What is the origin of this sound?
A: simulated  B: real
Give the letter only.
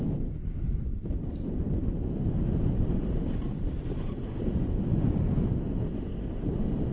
B